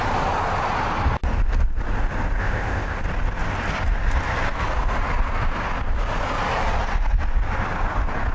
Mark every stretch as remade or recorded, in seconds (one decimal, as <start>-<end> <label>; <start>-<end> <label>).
0.0-2.4 recorded; 2.4-3.0 remade; 3.0-8.3 recorded